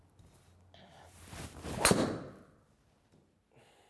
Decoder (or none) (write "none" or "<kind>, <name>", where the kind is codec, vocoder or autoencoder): none